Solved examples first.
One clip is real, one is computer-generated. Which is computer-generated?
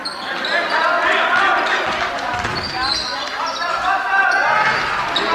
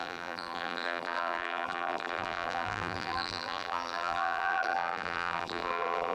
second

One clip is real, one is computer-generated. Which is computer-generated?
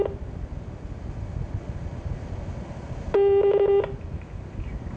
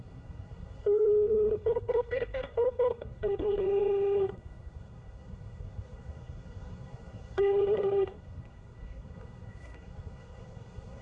second